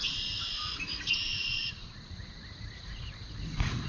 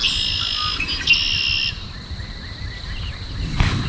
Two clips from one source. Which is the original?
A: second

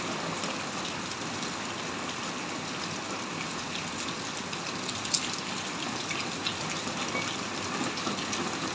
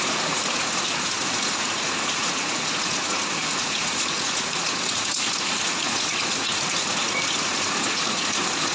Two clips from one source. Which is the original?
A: first